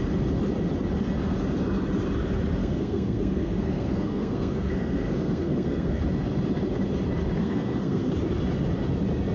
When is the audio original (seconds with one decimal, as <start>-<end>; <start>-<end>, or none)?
0.0-2.6; 6.0-7.4; 8.1-9.3